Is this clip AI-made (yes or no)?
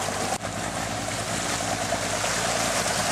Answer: no